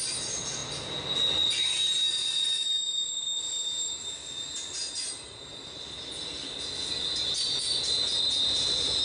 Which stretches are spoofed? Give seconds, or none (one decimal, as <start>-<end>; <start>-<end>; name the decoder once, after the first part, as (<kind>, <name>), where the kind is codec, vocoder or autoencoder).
none